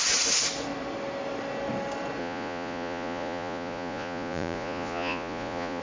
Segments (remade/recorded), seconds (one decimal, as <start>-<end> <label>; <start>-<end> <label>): 0.0-2.2 recorded; 2.2-5.8 remade